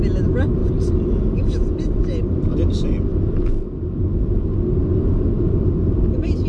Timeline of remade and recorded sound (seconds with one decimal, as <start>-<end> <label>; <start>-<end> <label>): 0.0-6.5 recorded